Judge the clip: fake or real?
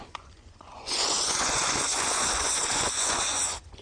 fake